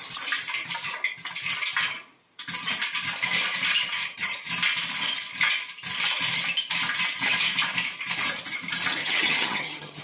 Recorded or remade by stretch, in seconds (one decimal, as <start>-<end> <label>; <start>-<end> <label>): 0.0-4.0 recorded; 4.0-4.5 remade; 4.5-9.0 recorded; 9.0-10.0 remade